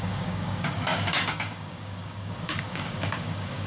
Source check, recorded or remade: remade